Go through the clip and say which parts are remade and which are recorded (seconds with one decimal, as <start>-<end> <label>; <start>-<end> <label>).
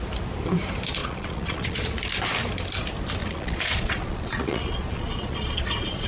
0.0-1.0 recorded; 1.0-2.0 remade; 2.0-3.2 recorded; 3.2-6.1 remade